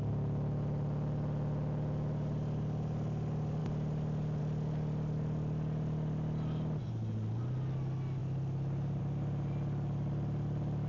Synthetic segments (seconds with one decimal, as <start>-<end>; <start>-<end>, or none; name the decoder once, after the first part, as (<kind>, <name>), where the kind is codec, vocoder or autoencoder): none